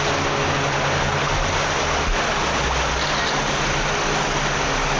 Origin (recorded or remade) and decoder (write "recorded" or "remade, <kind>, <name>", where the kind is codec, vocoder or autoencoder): recorded